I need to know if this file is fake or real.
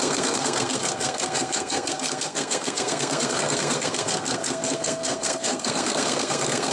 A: fake